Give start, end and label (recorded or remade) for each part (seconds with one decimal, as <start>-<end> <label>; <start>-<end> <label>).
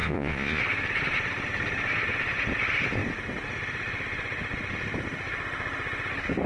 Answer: 0.0-0.6 remade; 0.6-6.5 recorded